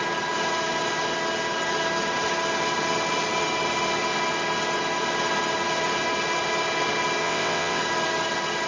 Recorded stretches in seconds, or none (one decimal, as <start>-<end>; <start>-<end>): 0.0-7.2; 7.8-8.7